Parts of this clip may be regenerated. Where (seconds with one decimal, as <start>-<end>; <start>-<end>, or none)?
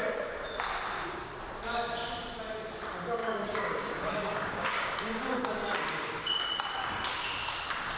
3.2-5.4